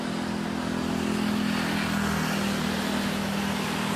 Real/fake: real